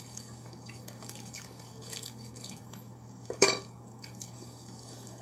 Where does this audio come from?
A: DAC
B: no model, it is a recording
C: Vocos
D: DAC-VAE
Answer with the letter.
A